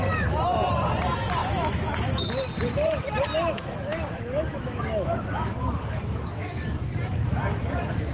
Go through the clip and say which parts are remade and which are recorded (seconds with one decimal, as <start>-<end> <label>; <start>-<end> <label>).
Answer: 0.0-1.4 recorded; 1.4-2.3 remade; 2.3-3.9 recorded; 3.9-6.8 remade; 6.8-8.1 recorded